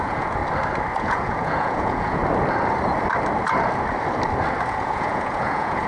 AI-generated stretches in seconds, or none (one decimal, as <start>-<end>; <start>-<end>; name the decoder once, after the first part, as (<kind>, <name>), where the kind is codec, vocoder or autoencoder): 0.0-0.4 (vocoder, Vocos); 1.0-2.2; 4.7-5.9